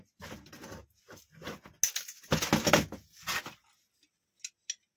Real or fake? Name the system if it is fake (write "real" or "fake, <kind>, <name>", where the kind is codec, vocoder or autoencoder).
real